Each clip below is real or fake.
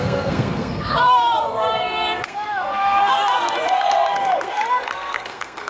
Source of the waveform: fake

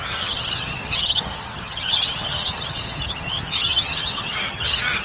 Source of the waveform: fake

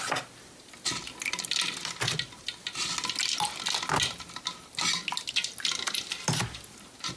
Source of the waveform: real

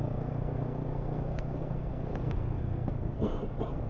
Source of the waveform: fake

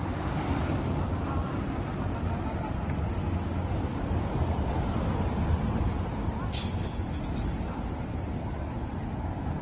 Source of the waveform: real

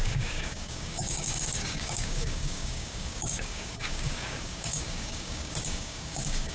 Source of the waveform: fake